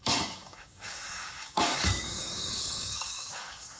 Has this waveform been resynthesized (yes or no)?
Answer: yes